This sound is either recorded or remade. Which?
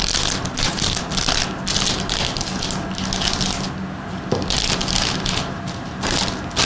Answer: recorded